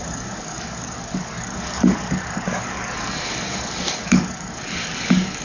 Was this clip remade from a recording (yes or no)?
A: yes